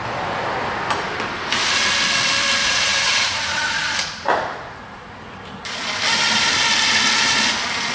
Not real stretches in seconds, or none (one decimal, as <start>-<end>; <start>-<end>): 2.6-5.1